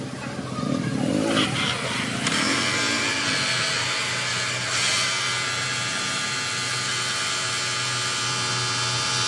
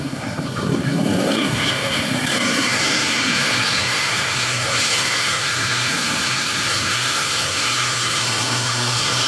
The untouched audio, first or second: first